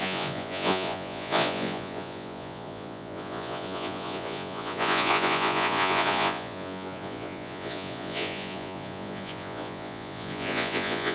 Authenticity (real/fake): fake